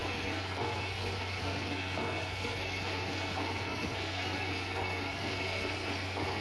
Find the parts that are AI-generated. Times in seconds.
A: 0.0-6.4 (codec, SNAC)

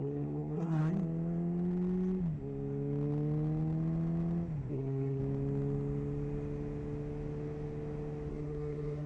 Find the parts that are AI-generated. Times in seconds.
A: 0.0-0.8 (codec, SNAC); 4.7-5.2; 8.3-9.1

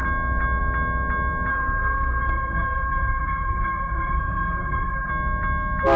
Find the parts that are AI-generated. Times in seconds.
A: 1.5-5.1 (codec, SNAC)

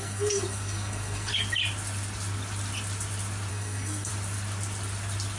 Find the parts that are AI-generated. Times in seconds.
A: 0.0-1.3 (codec, SNAC); 3.5-4.1

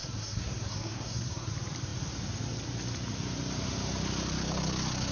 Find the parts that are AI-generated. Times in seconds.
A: 0.0-1.5 (codec, SNAC)

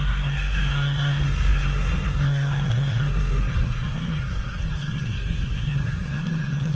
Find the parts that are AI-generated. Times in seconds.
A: 0.0-6.8 (codec, SNAC)

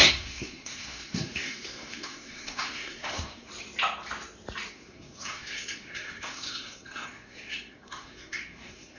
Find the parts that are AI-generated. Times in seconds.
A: 0.0-3.5 (codec, SNAC); 4.7-9.0

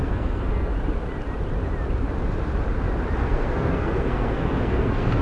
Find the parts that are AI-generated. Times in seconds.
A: 0.0-0.7 (codec, SNAC); 3.2-5.2